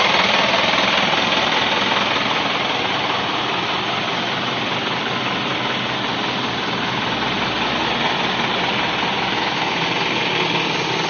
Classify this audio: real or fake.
real